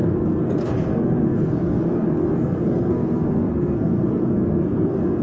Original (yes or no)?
no